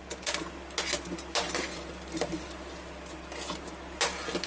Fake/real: real